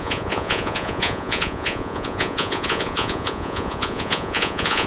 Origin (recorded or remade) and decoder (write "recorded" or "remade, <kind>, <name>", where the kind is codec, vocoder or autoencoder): remade, vocoder, Vocos